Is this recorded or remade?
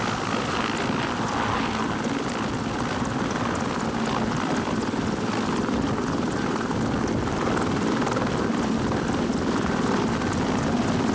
recorded